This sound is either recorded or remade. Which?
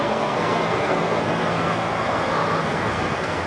remade